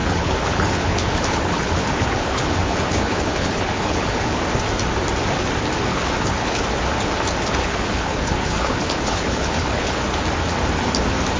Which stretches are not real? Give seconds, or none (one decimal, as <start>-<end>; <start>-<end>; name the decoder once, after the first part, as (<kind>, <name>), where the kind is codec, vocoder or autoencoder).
0.0-4.6 (codec, HILCodec); 5.9-6.6; 7.6-10.0